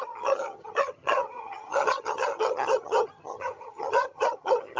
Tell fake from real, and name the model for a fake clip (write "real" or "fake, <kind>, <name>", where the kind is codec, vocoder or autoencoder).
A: fake, vocoder, HiFi-GAN